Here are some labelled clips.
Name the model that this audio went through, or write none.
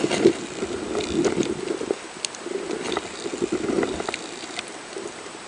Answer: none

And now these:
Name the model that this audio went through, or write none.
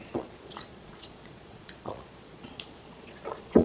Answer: vocoder, Vocos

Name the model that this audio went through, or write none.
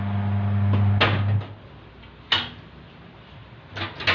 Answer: none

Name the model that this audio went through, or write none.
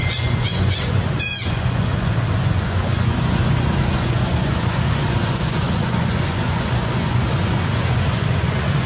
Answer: vocoder, Vocos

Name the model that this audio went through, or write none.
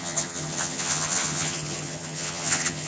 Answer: vocoder, HiFi-GAN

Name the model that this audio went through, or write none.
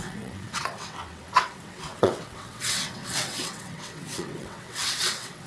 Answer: vocoder, WaveNeXt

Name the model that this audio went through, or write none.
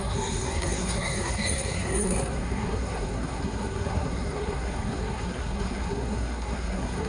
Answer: codec, SNAC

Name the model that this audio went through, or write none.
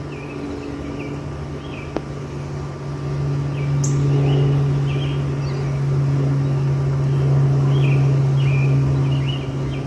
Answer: none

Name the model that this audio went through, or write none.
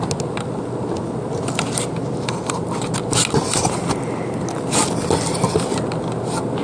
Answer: none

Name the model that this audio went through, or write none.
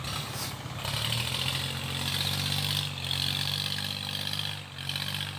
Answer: none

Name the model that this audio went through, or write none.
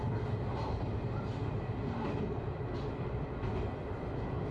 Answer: none